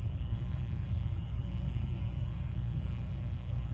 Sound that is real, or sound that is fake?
fake